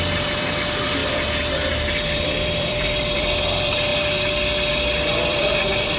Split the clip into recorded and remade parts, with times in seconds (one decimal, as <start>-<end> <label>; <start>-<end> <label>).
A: 0.0-1.0 remade; 1.0-1.7 recorded; 1.7-3.9 remade; 3.9-4.7 recorded; 4.7-6.0 remade